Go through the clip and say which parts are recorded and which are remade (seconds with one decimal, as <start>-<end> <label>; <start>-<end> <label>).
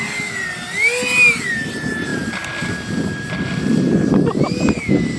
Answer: 0.0-5.2 recorded